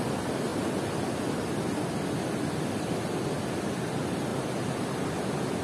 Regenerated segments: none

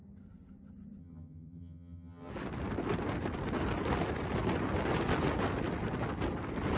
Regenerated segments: 1.0-2.3 (vocoder, HiFi-GAN)

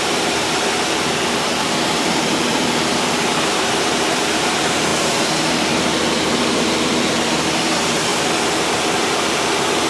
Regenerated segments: 0.0-8.1 (vocoder, BigVGAN v2); 9.0-9.9